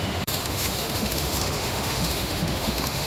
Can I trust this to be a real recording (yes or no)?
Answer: no